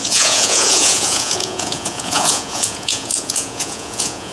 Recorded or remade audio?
remade